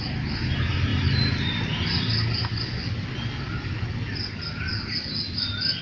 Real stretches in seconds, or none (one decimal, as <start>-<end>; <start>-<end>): 0.0-5.8